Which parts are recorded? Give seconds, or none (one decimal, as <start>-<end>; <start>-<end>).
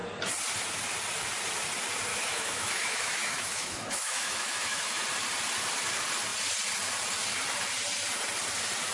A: 0.0-2.1; 5.0-8.9